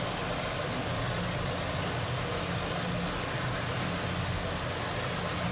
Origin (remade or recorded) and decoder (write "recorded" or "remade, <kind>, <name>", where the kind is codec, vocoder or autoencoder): recorded